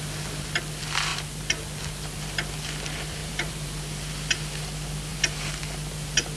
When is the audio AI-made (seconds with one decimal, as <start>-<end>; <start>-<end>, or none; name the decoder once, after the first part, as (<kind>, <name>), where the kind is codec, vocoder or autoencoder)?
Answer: 3.2-3.8 (vocoder, BigVGAN v2); 5.1-5.6